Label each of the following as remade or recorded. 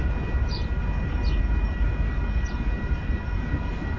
recorded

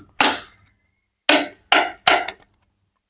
recorded